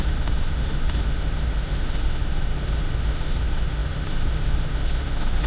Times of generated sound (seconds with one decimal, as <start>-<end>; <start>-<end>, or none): 0.0-5.5

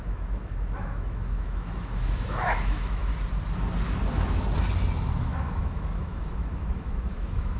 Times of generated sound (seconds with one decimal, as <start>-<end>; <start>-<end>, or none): 0.0-3.1; 5.2-7.6

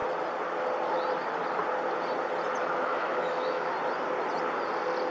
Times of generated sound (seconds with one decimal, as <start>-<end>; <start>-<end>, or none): 2.6-3.7

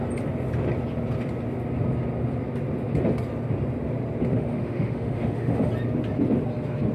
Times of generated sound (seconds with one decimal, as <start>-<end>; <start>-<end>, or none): 4.3-5.7

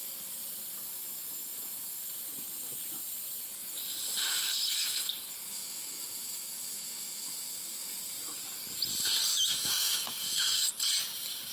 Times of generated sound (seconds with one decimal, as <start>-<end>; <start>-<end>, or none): 0.8-2.0; 5.5-8.0; 9.3-10.7

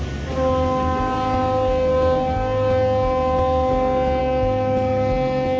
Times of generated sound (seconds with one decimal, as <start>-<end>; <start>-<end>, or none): 4.2-5.6

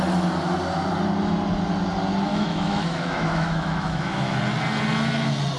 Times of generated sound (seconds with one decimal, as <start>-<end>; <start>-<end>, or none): 2.3-4.4